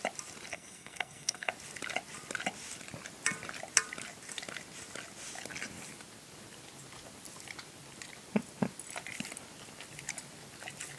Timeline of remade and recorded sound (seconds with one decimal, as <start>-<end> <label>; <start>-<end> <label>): 0.0-0.5 recorded; 0.5-1.5 remade; 1.5-11.0 recorded

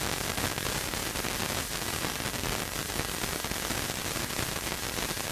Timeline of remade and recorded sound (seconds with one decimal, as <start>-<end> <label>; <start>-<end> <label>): 0.0-5.3 recorded

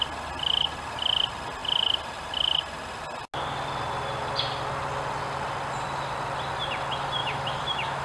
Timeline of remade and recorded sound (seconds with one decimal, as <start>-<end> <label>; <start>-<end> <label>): 0.0-7.2 recorded; 7.2-8.0 remade

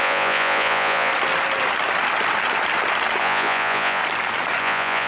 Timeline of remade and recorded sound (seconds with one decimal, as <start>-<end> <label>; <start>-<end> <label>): 0.0-1.1 remade; 1.1-3.2 recorded; 3.2-4.0 remade; 4.0-4.6 recorded; 4.6-5.1 remade

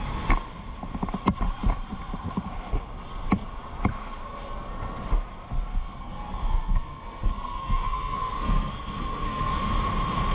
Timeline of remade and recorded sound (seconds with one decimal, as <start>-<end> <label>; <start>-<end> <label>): 0.0-5.7 recorded; 5.7-9.6 remade; 9.6-10.3 recorded